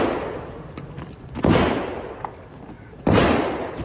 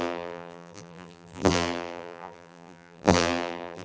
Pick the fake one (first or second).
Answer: second